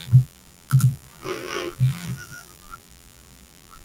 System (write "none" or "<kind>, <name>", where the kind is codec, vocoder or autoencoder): vocoder, BigVGAN v2